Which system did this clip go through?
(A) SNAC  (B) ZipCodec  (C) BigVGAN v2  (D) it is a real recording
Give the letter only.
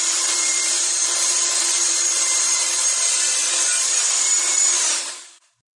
C